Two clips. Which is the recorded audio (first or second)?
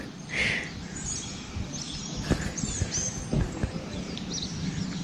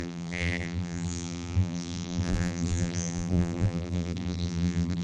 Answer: first